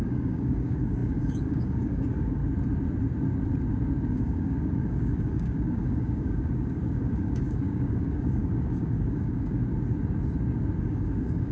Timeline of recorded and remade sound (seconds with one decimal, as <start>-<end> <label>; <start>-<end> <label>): 0.0-2.4 remade; 2.4-4.1 recorded; 4.1-9.6 remade; 9.6-10.8 recorded; 10.8-11.5 remade